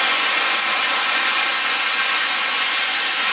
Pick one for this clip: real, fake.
fake